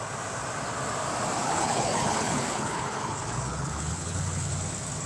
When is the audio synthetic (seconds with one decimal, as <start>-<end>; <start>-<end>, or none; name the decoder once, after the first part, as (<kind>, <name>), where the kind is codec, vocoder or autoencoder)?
1.4-4.5 (codec, HILCodec)